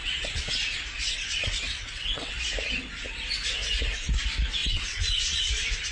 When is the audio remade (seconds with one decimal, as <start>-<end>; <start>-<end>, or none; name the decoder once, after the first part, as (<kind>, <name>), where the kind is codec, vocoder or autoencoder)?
0.0-0.5 (vocoder, WaveNeXt); 1.0-2.3; 4.6-5.5